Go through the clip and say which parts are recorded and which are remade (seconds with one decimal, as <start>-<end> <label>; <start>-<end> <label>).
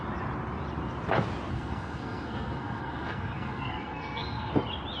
0.0-1.5 recorded; 1.5-4.5 remade; 4.5-5.0 recorded